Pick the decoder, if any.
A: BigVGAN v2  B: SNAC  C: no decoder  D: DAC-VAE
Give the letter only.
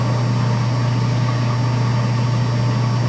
C